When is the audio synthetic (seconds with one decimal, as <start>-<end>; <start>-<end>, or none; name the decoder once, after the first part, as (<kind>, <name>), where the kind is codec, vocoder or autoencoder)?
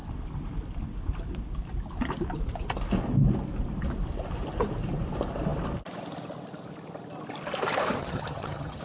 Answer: 8.0-8.8 (vocoder, HiFi-GAN)